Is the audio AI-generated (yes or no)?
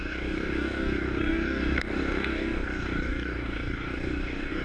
yes